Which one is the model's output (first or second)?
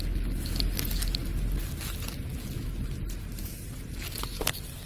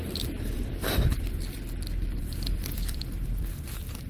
second